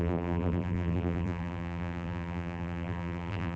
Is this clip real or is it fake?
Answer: fake